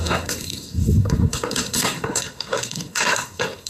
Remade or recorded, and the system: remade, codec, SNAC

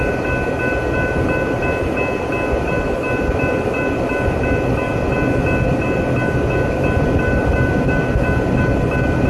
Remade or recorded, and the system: recorded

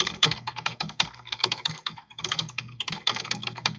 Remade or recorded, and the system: remade, codec, SNAC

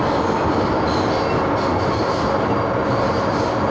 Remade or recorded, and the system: recorded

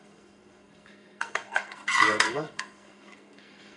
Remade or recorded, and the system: remade, codec, SNAC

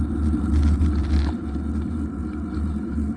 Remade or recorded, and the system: recorded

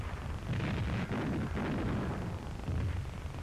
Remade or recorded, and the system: recorded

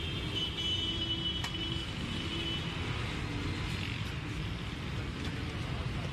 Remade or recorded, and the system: recorded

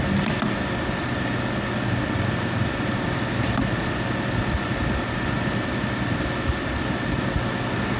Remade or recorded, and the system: recorded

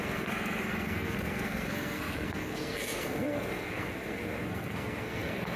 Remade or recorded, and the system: remade, codec, SNAC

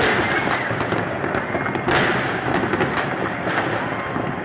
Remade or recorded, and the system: recorded